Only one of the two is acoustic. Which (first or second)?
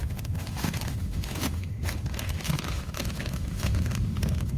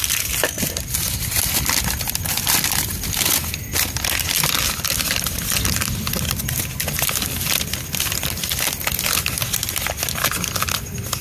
second